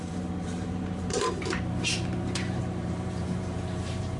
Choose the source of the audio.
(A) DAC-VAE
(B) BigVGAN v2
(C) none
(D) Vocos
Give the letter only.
B